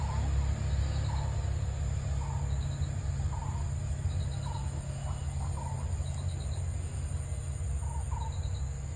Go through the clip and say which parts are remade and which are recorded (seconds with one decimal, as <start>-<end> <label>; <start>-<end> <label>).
0.0-9.0 recorded